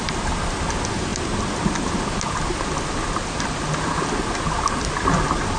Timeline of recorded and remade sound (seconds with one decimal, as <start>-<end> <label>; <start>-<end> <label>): 0.0-5.6 recorded

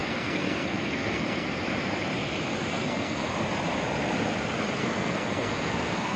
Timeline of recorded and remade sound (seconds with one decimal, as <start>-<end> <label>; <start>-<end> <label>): 0.0-1.6 remade; 1.6-2.7 recorded; 2.7-3.3 remade; 3.3-4.8 recorded; 4.8-6.2 remade

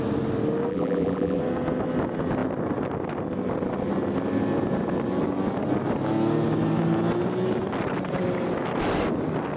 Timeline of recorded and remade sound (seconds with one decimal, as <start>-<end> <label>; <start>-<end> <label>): 0.0-0.7 recorded; 0.7-1.4 remade; 1.4-9.6 recorded

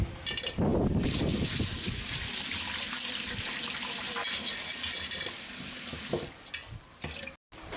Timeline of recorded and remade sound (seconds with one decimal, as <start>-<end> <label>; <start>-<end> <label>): 0.0-7.8 recorded

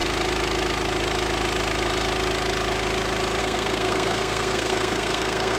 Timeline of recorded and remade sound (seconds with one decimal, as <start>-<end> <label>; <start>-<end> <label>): 0.0-3.4 recorded; 3.4-5.6 remade

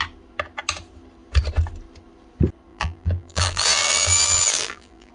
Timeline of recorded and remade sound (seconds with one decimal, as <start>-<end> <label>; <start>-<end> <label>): 0.0-2.7 recorded; 2.7-5.1 remade

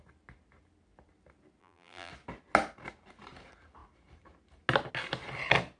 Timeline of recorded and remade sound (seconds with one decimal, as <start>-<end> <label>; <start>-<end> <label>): 0.0-1.6 recorded; 1.6-2.1 remade; 2.1-5.8 recorded

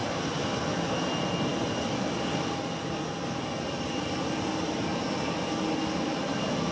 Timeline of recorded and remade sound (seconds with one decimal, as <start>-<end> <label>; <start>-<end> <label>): 0.0-6.7 recorded